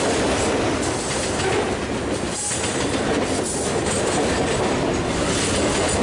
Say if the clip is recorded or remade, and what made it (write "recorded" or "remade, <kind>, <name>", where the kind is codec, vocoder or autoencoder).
recorded